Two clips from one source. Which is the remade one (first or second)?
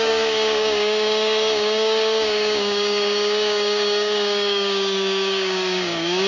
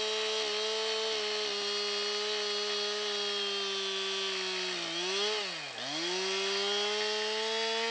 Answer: first